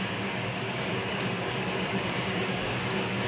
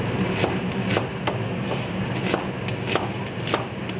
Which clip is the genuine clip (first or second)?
second